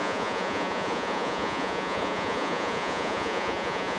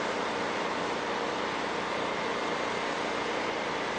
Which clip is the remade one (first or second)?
first